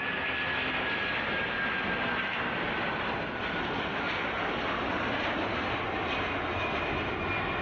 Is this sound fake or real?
real